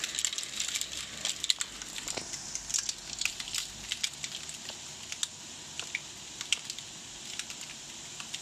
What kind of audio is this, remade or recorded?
recorded